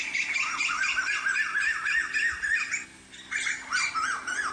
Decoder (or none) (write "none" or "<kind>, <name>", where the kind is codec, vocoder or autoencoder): none